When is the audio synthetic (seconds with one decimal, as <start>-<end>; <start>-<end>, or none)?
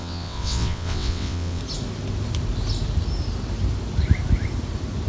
0.0-1.6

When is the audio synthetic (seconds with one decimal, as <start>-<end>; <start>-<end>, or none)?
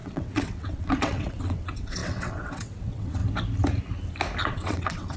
0.0-3.2; 4.5-5.2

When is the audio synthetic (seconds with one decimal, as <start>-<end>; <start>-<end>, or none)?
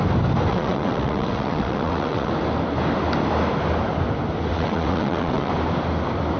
0.5-2.3; 4.5-5.5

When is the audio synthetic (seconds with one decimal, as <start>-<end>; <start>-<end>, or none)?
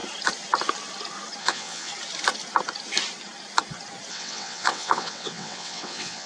1.4-1.9; 4.1-6.3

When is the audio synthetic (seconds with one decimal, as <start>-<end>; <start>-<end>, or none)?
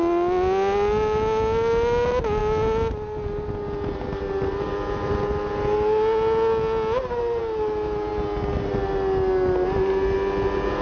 none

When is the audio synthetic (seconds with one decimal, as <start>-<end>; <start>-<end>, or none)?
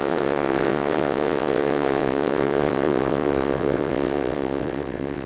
0.0-5.3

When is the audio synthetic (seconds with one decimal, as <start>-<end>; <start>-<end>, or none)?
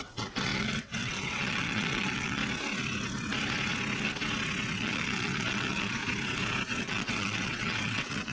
0.0-2.4; 4.7-6.0; 6.8-8.3